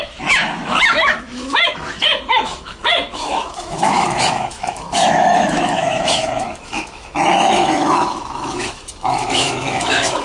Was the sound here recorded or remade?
remade